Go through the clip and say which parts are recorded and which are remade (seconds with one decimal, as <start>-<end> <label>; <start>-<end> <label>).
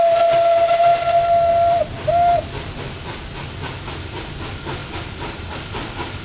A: 0.0-6.2 recorded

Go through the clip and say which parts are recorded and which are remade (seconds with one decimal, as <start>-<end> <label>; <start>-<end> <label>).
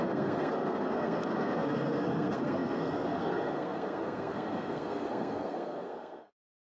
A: 0.0-6.7 remade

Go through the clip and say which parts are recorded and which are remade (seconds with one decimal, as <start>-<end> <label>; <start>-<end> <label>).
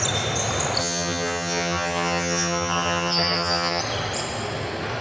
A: 0.0-0.8 recorded; 0.8-3.8 remade; 3.8-5.0 recorded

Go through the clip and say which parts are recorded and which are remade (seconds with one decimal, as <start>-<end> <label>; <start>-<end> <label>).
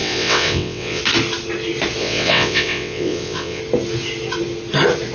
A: 0.0-1.0 remade; 1.0-2.0 recorded; 2.0-3.6 remade; 3.6-5.1 recorded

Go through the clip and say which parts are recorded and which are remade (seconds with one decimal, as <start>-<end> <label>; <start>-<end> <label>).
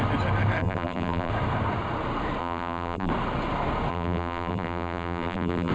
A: 0.0-0.6 recorded; 0.6-1.3 remade; 1.3-2.4 recorded; 2.4-3.1 remade; 3.1-3.9 recorded; 3.9-5.7 remade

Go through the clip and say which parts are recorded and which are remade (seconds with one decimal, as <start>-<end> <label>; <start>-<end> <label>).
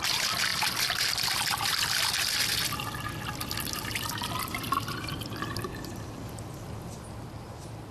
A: 0.0-7.9 recorded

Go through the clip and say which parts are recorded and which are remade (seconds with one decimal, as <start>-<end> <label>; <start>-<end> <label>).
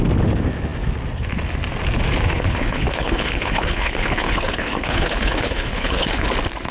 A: 0.0-2.3 recorded; 2.3-6.3 remade; 6.3-6.7 recorded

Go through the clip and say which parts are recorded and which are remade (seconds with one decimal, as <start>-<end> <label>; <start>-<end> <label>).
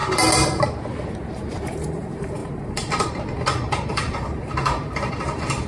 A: 0.0-1.1 recorded; 1.1-5.7 remade